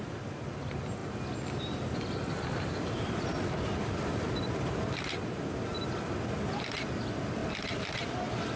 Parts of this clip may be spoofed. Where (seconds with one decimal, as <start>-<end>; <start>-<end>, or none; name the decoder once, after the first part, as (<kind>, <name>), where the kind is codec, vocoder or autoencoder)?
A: 0.0-1.0 (vocoder, BigVGAN v2); 1.6-8.6